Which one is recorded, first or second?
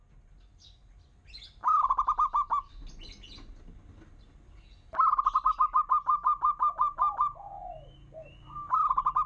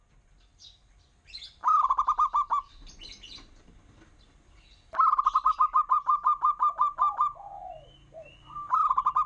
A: first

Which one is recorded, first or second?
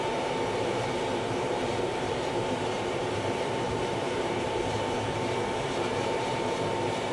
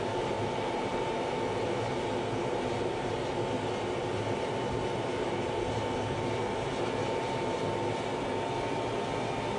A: second